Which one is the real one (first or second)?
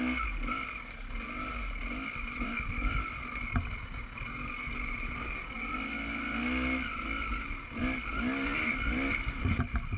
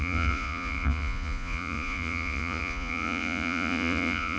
first